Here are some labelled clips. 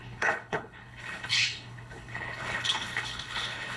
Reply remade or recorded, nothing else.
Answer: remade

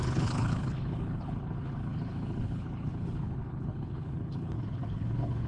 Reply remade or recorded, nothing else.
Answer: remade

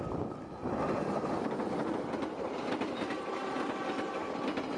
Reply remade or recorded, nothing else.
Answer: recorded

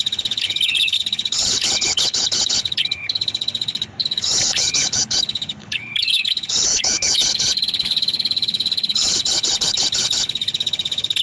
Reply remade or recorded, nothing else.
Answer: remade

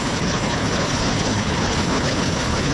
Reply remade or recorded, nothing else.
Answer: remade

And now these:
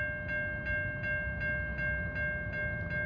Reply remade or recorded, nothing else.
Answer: recorded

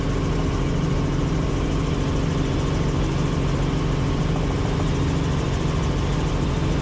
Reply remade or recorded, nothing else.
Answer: recorded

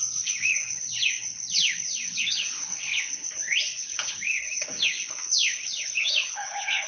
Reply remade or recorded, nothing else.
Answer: remade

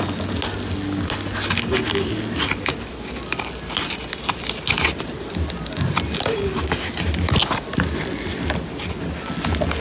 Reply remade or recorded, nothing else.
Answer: recorded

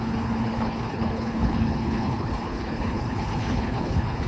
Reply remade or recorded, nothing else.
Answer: remade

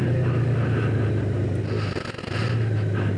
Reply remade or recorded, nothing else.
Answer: recorded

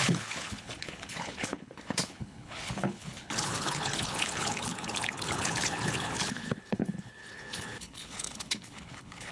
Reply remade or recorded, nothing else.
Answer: remade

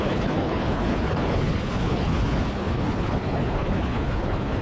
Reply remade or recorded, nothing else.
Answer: remade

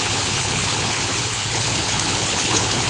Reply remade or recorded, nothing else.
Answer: remade